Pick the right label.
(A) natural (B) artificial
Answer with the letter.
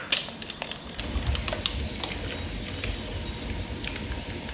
A